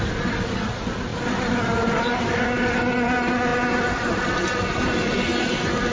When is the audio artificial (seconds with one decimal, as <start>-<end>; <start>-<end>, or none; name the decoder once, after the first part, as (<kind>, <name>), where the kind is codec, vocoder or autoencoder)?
none